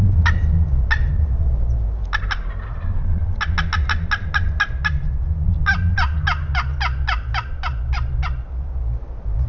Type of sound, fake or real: real